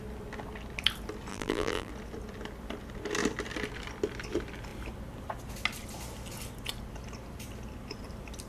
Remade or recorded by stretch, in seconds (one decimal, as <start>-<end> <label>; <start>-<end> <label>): 0.0-1.3 recorded; 1.3-1.9 remade; 1.9-8.5 recorded